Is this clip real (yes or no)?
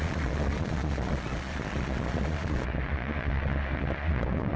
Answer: no